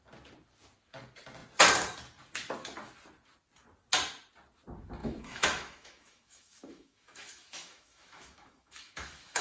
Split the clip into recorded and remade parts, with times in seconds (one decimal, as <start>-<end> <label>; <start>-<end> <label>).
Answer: 0.0-5.0 recorded; 5.0-9.4 remade